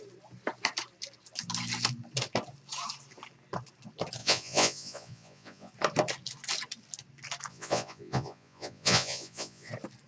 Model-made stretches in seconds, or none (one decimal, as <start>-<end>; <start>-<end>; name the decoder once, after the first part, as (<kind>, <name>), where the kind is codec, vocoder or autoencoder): 4.2-5.7 (vocoder, Vocos); 7.5-9.7

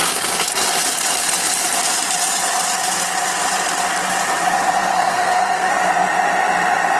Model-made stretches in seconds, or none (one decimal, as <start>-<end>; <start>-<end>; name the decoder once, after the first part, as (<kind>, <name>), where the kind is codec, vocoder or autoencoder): 4.9-5.7 (codec, SNAC)

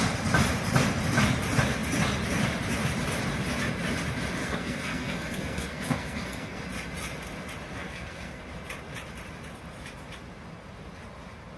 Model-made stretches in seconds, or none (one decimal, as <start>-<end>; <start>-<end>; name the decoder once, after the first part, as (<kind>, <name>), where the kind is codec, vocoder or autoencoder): 4.4-6.6 (codec, SNAC); 7.7-8.4

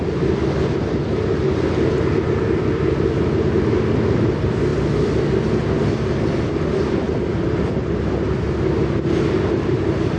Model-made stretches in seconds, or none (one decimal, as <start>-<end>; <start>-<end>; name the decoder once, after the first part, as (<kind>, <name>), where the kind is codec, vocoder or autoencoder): none

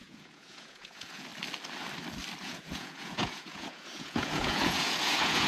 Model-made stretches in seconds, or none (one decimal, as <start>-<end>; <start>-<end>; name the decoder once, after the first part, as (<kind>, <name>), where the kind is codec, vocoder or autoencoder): 0.0-1.3 (vocoder, Vocos); 2.4-5.5

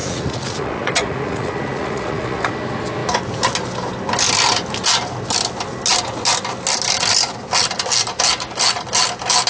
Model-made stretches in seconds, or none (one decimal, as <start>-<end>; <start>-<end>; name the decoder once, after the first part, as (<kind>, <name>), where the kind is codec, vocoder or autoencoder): 0.0-2.5 (vocoder, Vocos)

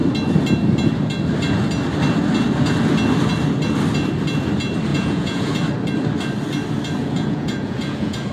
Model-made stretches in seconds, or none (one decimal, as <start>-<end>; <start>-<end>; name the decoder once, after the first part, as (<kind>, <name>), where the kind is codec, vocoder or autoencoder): 4.9-5.5 (vocoder, Vocos); 7.0-8.3

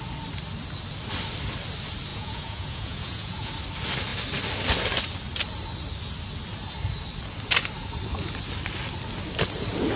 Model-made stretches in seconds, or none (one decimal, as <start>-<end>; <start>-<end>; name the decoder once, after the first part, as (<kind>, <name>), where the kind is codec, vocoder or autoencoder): 2.1-3.5 (vocoder, Vocos)